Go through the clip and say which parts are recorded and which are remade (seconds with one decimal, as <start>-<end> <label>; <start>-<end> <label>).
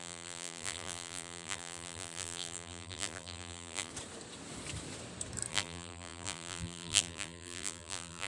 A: 0.0-3.9 remade; 3.9-5.5 recorded; 5.5-8.3 remade